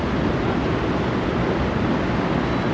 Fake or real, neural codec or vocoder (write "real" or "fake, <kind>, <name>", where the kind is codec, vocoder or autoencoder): real